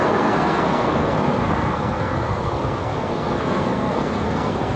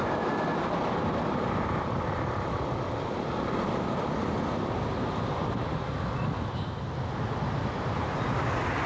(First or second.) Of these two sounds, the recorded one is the second